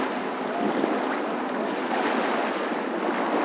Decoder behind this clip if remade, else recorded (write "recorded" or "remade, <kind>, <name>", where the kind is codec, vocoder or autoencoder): recorded